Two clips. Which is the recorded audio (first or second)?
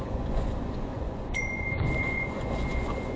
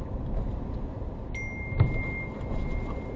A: second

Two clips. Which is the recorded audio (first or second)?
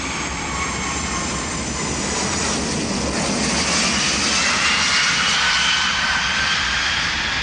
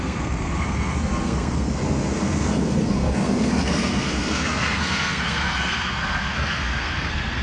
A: first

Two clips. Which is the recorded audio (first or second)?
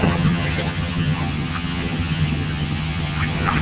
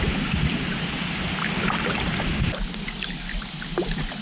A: second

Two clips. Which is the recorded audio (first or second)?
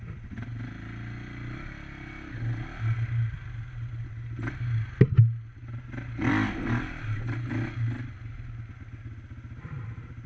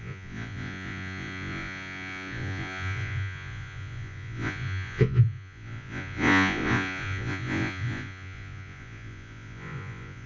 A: first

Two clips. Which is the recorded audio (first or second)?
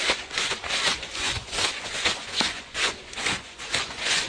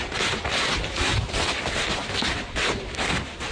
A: second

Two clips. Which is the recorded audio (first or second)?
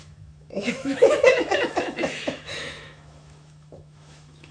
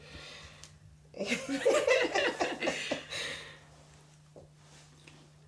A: second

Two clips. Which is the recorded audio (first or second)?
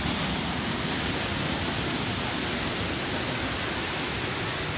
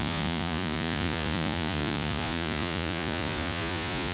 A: first